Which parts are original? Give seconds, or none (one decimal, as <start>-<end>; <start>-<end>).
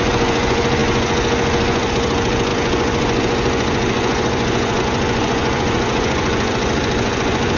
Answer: none